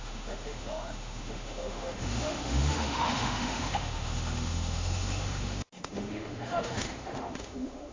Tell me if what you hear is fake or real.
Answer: fake